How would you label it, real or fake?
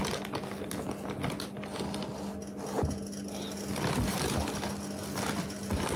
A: real